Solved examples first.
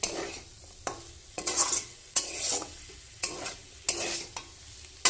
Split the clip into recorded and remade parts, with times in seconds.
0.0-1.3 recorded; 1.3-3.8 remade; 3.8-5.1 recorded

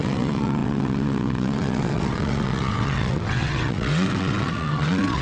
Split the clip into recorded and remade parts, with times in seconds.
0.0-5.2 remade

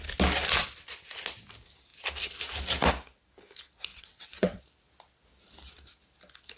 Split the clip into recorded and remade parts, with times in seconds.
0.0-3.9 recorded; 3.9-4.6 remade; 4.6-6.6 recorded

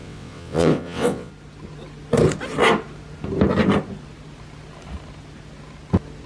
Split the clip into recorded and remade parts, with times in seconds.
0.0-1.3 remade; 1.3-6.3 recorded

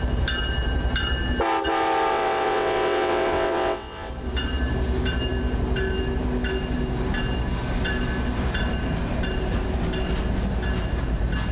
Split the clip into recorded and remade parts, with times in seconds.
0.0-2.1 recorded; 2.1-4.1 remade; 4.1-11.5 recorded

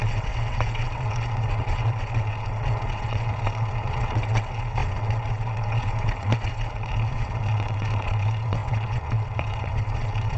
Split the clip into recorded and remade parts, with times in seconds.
0.0-10.4 remade

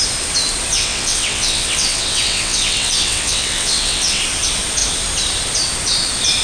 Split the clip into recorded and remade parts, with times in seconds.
0.0-0.7 recorded; 0.7-4.2 remade; 4.2-6.4 recorded